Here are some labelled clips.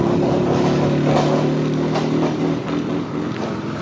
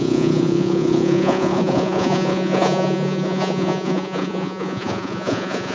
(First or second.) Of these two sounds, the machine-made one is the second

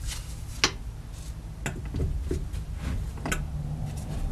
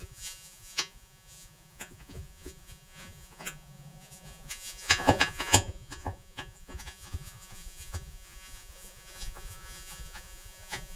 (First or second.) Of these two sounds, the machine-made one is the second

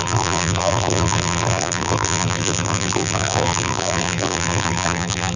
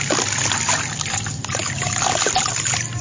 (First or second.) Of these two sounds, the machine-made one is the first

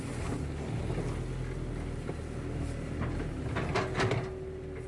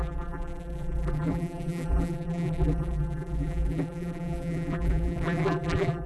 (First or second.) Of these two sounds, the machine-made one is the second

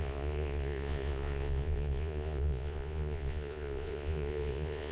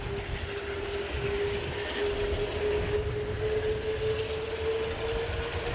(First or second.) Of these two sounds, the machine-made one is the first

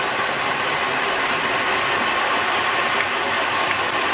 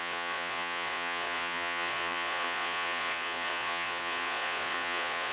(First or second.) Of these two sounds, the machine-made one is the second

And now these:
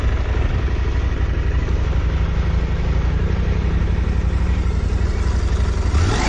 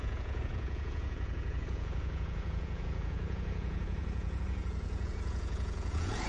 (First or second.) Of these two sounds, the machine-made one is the second